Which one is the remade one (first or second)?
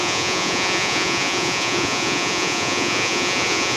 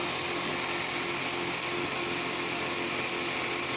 first